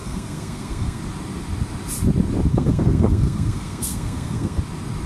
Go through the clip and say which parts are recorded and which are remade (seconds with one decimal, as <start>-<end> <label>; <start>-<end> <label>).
0.0-1.0 remade; 1.0-2.5 recorded; 2.5-4.6 remade; 4.6-5.1 recorded

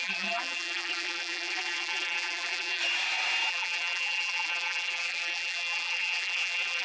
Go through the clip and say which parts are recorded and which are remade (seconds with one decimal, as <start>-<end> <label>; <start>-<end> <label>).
0.0-2.8 remade; 2.8-3.5 recorded; 3.5-6.8 remade

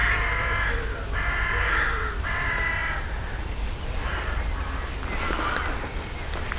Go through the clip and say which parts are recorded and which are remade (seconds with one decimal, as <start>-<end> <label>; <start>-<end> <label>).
0.0-6.6 recorded

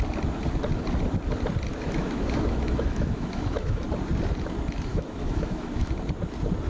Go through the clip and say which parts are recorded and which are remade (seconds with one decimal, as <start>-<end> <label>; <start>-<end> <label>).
0.0-1.7 recorded; 1.7-3.8 remade; 3.8-4.9 recorded; 4.9-5.9 remade; 5.9-6.7 recorded

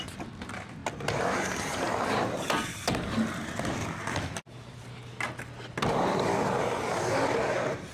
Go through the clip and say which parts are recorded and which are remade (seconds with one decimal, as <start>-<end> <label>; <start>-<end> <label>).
0.0-7.9 recorded

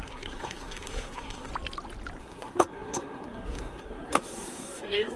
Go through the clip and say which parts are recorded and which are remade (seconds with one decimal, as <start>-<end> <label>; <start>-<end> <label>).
0.0-1.5 remade; 1.5-2.2 recorded; 2.2-5.2 remade